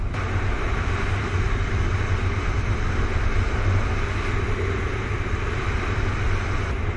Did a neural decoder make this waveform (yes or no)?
no